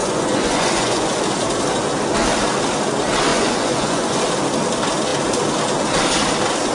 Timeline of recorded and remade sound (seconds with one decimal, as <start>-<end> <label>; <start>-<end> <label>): 0.0-1.2 remade; 1.2-3.3 recorded; 3.3-4.2 remade; 4.2-6.7 recorded